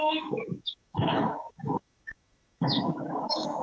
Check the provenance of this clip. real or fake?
fake